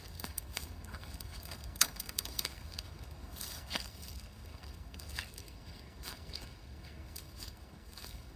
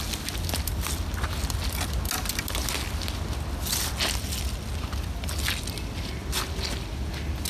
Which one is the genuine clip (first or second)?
second